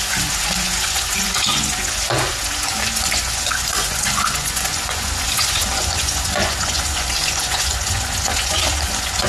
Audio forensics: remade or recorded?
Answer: remade